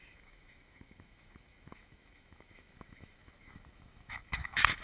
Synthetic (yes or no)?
yes